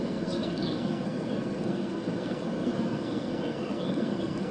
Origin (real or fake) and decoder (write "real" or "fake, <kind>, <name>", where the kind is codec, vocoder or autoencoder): fake, codec, SNAC